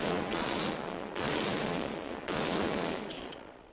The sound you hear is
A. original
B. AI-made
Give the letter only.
B